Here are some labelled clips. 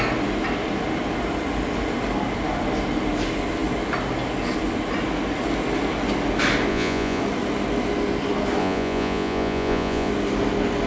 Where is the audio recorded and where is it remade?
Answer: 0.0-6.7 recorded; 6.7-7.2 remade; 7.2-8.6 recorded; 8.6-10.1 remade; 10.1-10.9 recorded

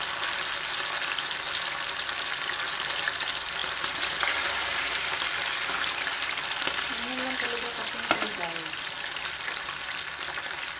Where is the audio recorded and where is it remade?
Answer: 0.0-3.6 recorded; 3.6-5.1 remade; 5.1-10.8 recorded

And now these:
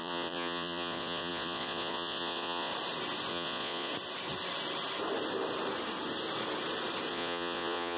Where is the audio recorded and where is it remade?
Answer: 0.0-2.7 remade; 2.7-3.3 recorded; 3.3-3.9 remade; 3.9-7.1 recorded; 7.1-8.0 remade

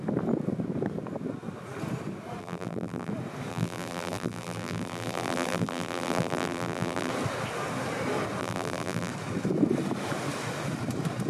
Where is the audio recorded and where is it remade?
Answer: 0.0-2.4 recorded; 2.4-3.1 remade; 3.1-3.5 recorded; 3.5-7.1 remade; 7.1-8.4 recorded; 8.4-9.1 remade; 9.1-11.3 recorded